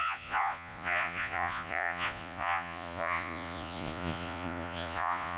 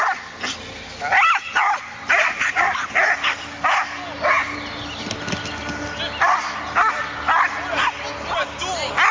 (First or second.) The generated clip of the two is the first